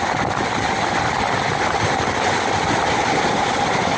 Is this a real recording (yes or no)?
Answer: yes